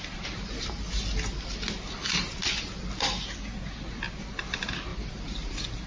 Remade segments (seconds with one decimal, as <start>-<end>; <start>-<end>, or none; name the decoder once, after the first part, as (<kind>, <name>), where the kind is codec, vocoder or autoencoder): none